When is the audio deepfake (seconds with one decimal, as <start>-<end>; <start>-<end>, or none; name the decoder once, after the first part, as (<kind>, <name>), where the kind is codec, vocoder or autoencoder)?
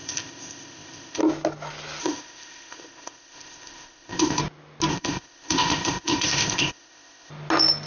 0.0-1.2 (codec, ZipCodec); 2.0-4.4; 4.9-7.3